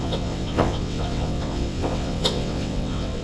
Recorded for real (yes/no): no